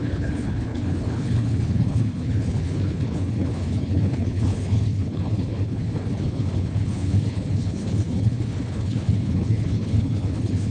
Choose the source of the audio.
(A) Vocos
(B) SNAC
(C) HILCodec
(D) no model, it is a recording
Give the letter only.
C